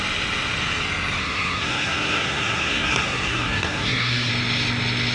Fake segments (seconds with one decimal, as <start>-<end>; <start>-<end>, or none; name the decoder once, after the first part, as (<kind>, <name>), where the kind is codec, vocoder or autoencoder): 1.2-4.3 (codec, SNAC)